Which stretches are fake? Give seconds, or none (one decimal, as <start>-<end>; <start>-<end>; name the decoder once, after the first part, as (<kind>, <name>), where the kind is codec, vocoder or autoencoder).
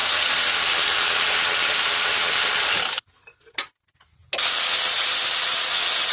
0.0-2.5 (vocoder, BigVGAN v2)